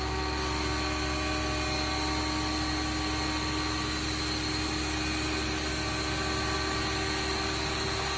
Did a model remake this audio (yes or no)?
no